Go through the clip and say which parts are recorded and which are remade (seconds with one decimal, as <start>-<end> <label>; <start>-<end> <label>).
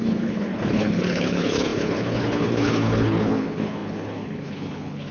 0.0-5.1 remade